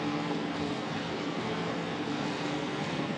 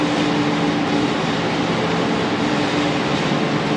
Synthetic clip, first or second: first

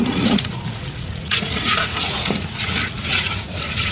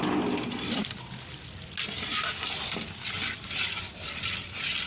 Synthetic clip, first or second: first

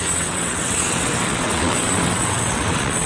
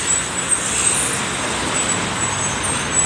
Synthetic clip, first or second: first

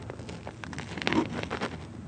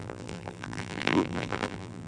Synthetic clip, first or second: second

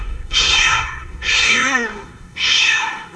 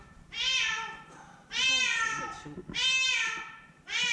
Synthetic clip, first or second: first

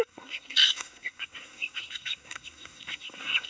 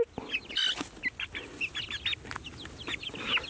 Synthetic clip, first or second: first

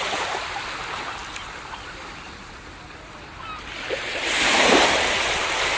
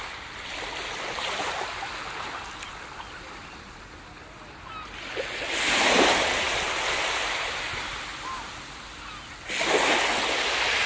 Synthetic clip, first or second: first